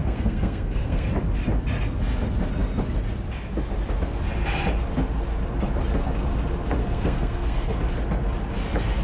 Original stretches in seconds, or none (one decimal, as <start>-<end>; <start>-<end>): 1.1-6.8; 7.8-9.0